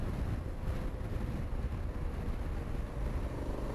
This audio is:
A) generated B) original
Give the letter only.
B